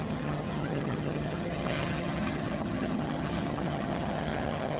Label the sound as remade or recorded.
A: remade